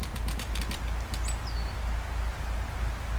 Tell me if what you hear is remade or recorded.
recorded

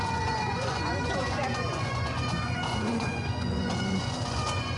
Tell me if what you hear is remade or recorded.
remade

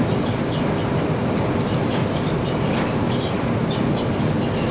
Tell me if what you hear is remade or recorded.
recorded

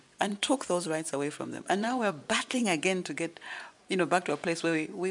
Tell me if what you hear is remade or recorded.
remade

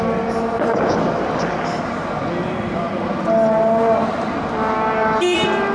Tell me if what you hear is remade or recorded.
recorded